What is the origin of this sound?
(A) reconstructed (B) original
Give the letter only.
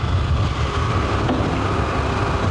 B